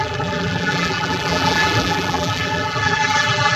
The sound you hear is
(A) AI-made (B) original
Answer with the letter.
A